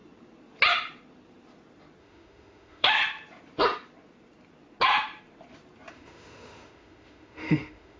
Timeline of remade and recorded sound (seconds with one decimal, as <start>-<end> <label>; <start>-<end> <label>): 0.0-2.0 recorded; 2.0-3.0 remade; 3.0-5.9 recorded; 5.9-8.0 remade